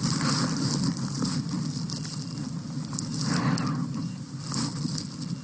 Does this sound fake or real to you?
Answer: real